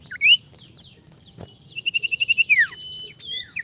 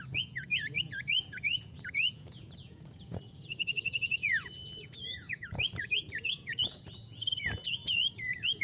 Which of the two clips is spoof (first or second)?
second